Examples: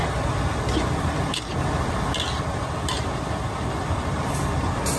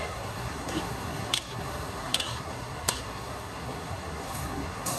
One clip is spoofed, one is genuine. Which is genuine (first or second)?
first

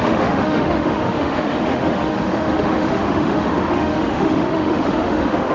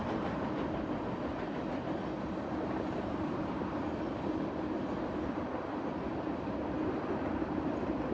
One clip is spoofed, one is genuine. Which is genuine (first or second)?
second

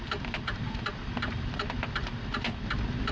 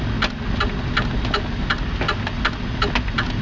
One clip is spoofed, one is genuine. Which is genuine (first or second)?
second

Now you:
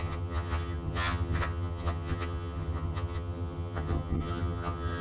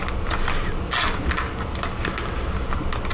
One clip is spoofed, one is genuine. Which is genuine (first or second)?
second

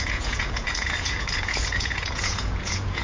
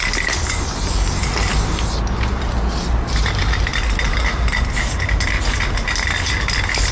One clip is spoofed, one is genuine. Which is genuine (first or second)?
second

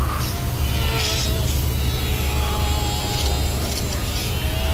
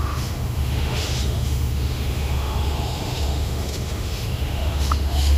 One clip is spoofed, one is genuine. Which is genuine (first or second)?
first